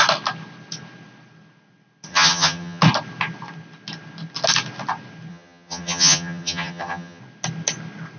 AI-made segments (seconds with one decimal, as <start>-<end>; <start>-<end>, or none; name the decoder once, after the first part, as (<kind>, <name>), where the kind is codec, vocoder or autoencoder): 2.1-2.8 (vocoder, HiFi-GAN); 5.3-7.2